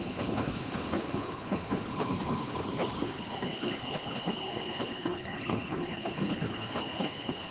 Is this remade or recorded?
remade